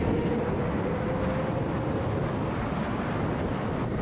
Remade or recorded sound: recorded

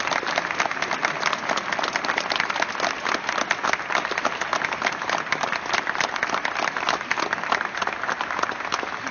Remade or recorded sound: recorded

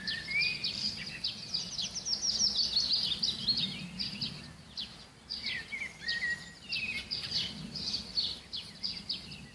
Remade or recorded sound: recorded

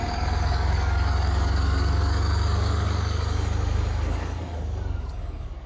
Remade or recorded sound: remade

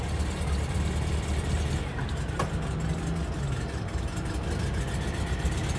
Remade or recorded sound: recorded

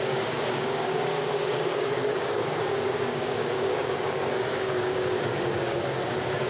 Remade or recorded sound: remade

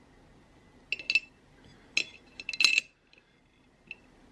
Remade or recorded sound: recorded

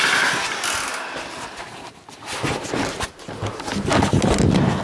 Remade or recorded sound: recorded